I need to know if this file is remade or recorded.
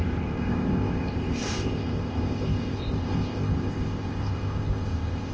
remade